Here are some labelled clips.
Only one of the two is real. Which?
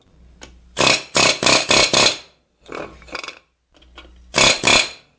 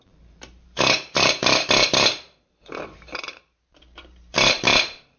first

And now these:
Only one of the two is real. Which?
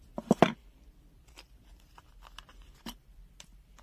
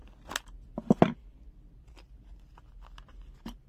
second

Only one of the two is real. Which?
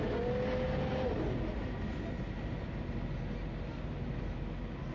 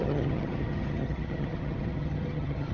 first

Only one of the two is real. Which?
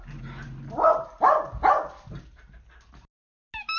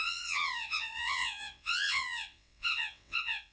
first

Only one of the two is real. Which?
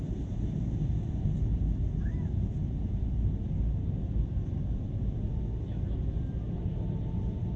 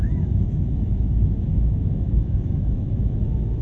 first